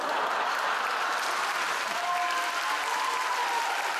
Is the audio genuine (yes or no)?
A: yes